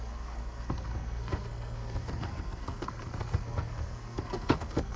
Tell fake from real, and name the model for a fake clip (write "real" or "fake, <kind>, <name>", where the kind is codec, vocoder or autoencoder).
fake, codec, SNAC